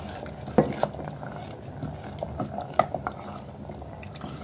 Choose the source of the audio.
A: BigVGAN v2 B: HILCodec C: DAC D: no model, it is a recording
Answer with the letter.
D